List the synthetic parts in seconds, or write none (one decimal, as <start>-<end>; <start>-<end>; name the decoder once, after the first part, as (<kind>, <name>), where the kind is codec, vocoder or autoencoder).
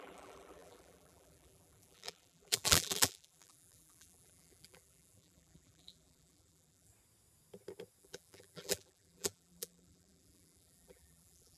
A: 0.0-6.9 (vocoder, BigVGAN v2); 8.0-11.6